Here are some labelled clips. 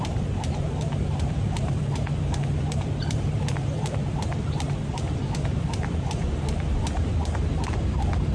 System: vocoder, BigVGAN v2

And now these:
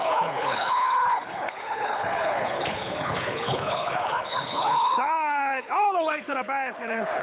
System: codec, HILCodec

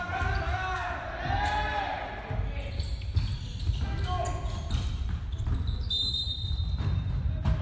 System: none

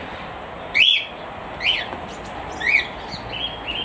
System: none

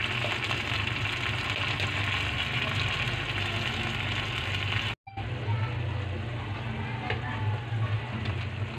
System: none